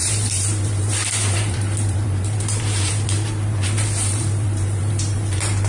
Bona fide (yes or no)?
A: no